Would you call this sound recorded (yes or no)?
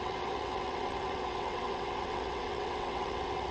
no